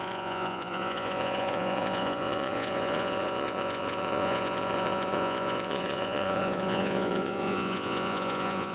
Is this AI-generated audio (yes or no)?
yes